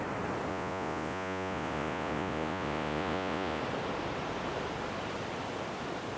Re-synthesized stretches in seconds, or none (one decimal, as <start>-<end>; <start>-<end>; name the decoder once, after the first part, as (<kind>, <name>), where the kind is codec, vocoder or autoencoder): 0.5-3.6 (vocoder, Vocos)